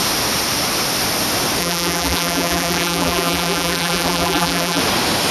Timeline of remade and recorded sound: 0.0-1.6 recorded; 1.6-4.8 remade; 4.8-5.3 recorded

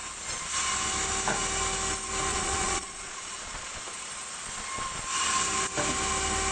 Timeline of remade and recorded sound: 0.0-2.3 recorded; 2.3-3.8 remade; 3.8-6.5 recorded

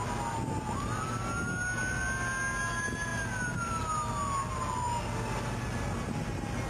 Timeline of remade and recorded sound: 0.0-6.7 recorded

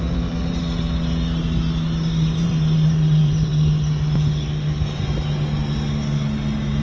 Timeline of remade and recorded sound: 0.0-0.6 remade; 0.6-2.4 recorded; 2.4-3.5 remade; 3.5-6.8 recorded